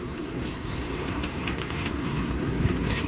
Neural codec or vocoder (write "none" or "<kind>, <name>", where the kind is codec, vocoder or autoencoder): codec, SNAC